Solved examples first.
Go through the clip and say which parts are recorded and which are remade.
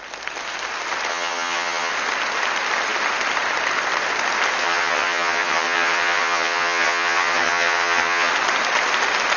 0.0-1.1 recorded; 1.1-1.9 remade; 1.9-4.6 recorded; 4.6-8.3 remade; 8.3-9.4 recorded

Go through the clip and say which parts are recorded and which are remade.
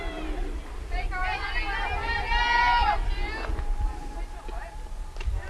0.0-5.5 recorded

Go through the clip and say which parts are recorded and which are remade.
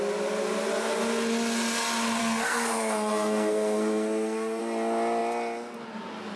0.0-2.2 recorded; 2.2-4.6 remade; 4.6-6.4 recorded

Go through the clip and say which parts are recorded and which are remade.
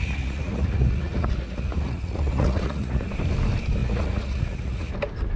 0.0-3.1 remade; 3.1-3.8 recorded; 3.8-4.9 remade; 4.9-5.4 recorded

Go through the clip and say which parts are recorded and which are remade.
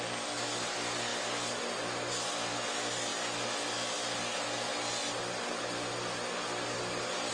0.0-7.3 recorded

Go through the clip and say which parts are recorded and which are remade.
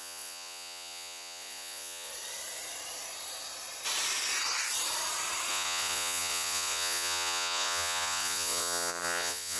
0.0-2.1 remade; 2.1-5.5 recorded; 5.5-9.6 remade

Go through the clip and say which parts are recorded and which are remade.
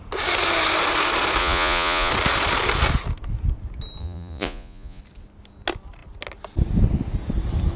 0.0-1.4 recorded; 1.4-2.1 remade; 2.1-4.0 recorded; 4.0-5.0 remade; 5.0-7.8 recorded